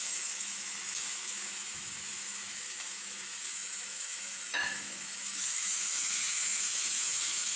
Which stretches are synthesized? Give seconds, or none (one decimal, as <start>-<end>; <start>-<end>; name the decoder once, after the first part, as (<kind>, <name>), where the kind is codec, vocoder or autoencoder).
0.0-7.6 (autoencoder, DAC-VAE)